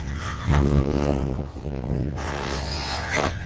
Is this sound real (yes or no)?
no